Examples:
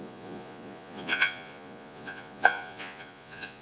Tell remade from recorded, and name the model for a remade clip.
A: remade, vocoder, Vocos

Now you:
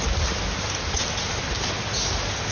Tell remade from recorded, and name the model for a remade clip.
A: recorded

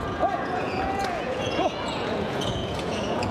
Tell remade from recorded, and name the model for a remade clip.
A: remade, vocoder, Vocos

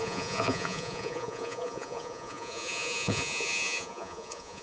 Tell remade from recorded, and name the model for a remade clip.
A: remade, vocoder, Vocos